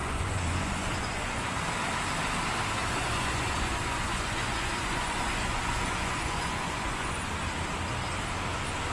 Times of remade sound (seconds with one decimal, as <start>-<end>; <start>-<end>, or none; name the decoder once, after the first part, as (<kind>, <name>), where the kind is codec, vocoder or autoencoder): 0.0-1.5 (vocoder, Vocos); 2.8-7.3